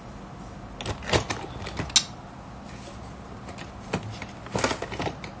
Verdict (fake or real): real